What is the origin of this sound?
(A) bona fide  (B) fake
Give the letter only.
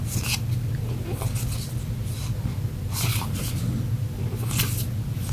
A